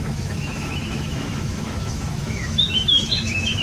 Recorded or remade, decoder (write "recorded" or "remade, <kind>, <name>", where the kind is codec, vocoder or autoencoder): remade, autoencoder, DAC-VAE